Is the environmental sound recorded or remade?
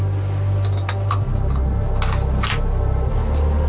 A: recorded